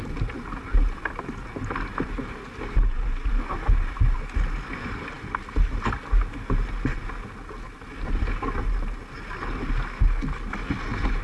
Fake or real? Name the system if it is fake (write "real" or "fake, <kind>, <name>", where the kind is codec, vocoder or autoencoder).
real